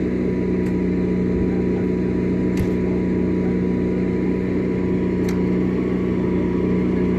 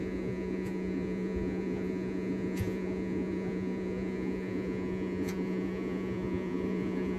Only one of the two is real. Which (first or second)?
first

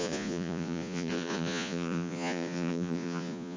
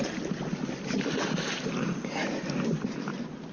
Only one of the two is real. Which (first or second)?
second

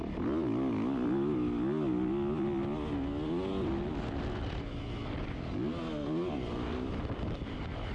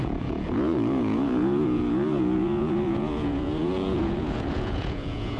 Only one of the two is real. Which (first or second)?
first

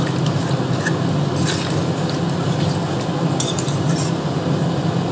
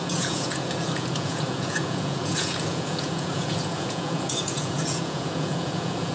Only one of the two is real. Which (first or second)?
first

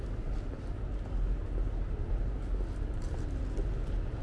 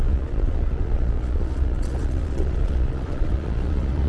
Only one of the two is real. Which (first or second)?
first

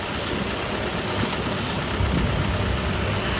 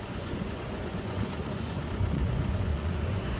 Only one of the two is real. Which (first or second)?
first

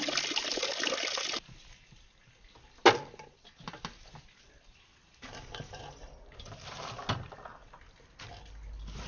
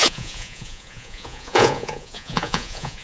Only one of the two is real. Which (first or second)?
first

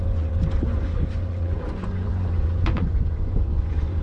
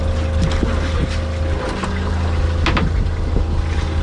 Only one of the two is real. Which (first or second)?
second